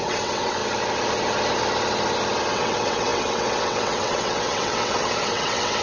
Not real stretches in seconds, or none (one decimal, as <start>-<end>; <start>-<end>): 0.0-0.6; 2.5-5.8